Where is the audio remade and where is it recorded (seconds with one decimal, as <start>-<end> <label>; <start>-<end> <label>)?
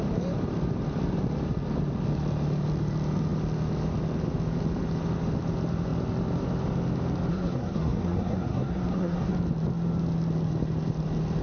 0.0-7.3 recorded; 7.3-9.3 remade; 9.3-11.4 recorded